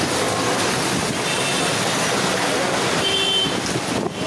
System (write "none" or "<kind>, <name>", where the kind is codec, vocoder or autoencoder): none